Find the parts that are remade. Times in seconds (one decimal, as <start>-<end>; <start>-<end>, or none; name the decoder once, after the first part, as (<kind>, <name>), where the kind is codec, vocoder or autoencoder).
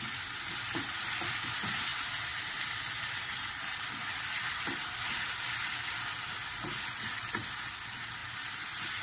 1.9-5.3 (vocoder, BigVGAN v2); 8.2-9.0